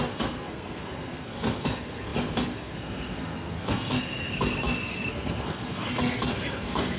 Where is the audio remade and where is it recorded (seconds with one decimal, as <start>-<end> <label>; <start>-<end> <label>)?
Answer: 0.0-7.0 remade